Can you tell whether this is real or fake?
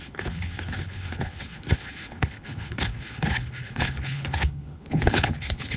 fake